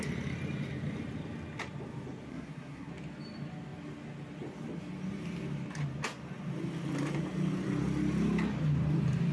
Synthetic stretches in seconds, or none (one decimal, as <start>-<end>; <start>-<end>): 2.3-2.9